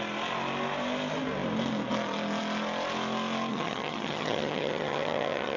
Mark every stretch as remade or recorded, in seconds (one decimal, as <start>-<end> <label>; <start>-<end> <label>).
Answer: 0.0-3.5 recorded; 3.5-5.6 remade